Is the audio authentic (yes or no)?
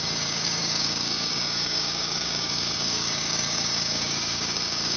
no